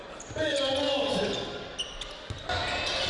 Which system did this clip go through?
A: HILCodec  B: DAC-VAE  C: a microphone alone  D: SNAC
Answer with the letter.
C